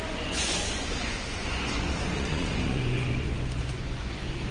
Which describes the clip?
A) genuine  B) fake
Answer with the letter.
B